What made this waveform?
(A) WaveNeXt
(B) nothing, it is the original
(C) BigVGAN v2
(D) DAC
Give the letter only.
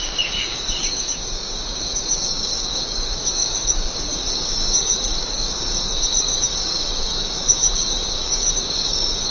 D